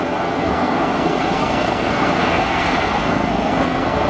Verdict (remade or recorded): remade